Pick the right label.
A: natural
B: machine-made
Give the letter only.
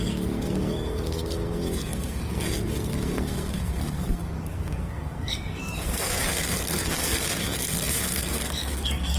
B